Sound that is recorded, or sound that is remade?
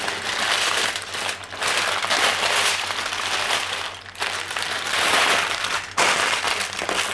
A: recorded